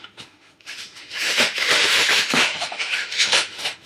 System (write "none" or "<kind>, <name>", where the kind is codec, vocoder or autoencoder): autoencoder, DAC-VAE